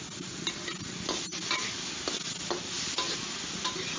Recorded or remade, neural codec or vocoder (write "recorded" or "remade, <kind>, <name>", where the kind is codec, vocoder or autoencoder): recorded